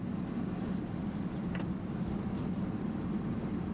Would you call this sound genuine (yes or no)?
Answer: no